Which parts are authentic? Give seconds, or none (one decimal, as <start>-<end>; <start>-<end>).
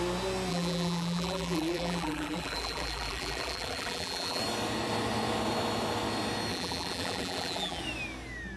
0.0-0.5; 4.4-6.5; 7.8-8.6